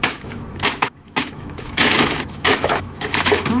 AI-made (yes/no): yes